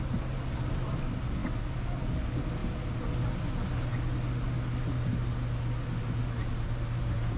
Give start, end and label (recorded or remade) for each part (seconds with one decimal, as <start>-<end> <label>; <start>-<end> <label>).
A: 0.0-7.4 recorded

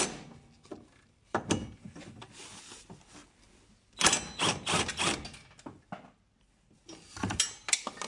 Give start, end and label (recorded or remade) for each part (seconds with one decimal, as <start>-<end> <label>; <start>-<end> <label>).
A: 0.0-8.1 recorded

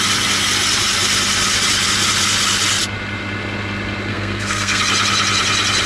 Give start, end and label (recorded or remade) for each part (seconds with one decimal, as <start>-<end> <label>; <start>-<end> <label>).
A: 0.0-4.1 recorded; 4.1-4.8 remade; 4.8-5.9 recorded

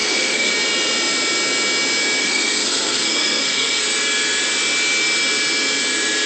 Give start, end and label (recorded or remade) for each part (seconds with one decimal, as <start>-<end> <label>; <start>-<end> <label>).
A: 0.0-0.5 remade; 0.5-2.2 recorded; 2.2-3.8 remade; 3.8-6.3 recorded

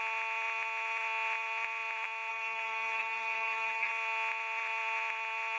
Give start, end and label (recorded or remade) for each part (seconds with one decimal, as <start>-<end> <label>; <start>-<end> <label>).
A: 0.0-2.3 recorded; 2.3-3.9 remade; 3.9-5.6 recorded

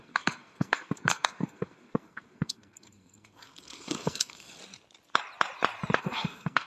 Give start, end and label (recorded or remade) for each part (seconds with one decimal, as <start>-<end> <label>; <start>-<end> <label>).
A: 0.0-4.6 remade; 4.6-6.0 recorded; 6.0-6.7 remade

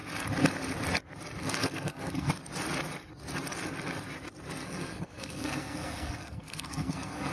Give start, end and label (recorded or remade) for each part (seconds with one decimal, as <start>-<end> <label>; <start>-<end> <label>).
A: 0.0-1.4 recorded; 1.4-2.3 remade; 2.3-4.6 recorded; 4.6-7.3 remade